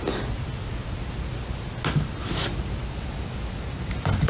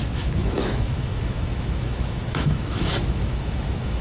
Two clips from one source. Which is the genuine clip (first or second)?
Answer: first